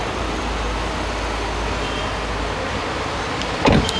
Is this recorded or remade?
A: recorded